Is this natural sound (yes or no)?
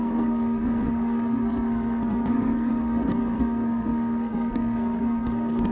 no